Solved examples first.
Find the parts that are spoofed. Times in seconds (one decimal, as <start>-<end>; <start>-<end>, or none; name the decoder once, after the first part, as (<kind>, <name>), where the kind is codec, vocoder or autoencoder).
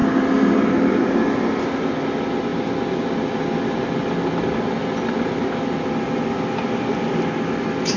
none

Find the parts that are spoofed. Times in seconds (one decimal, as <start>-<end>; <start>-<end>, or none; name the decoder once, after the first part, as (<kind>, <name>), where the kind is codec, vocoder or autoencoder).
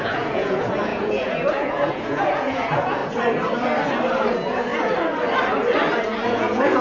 0.0-3.0 (vocoder, Vocos); 4.3-4.7; 6.0-6.8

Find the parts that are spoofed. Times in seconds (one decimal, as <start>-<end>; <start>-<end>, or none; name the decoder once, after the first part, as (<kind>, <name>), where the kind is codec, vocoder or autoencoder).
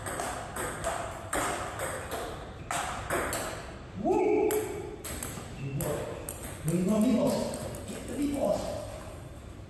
1.3-3.7 (vocoder, BigVGAN v2)